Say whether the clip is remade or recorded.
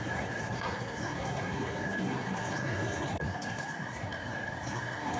remade